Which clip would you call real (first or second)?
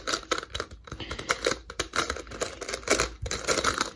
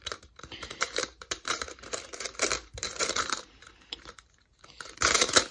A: first